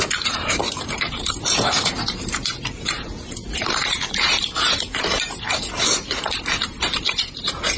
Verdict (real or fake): fake